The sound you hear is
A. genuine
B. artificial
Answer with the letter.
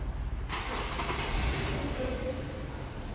A